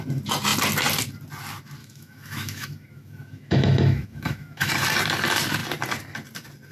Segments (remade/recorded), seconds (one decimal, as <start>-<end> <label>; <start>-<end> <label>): 0.0-1.8 recorded; 1.8-4.7 remade; 4.7-6.7 recorded